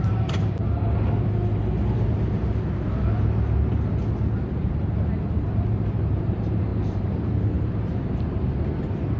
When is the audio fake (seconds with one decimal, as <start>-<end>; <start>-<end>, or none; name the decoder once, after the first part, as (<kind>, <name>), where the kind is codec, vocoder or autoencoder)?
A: 0.0-0.6 (vocoder, BigVGAN v2); 5.4-9.2